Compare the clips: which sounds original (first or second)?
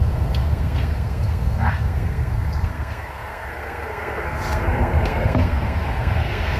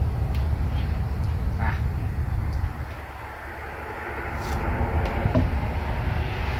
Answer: second